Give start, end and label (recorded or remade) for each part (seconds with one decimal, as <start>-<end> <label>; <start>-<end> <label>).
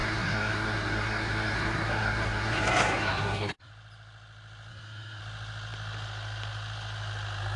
0.0-3.7 remade; 3.7-4.7 recorded; 4.7-5.2 remade; 5.2-7.6 recorded